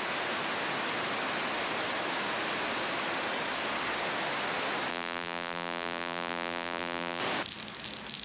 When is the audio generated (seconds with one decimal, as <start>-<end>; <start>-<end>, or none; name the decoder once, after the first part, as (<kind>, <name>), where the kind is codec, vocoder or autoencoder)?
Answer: 4.9-7.2 (vocoder, BigVGAN v2)